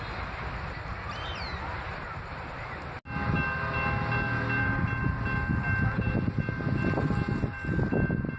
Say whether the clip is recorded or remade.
recorded